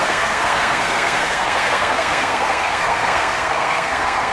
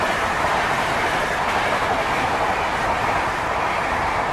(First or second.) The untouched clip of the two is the second